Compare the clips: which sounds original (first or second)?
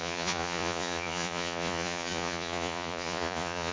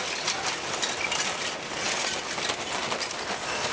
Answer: second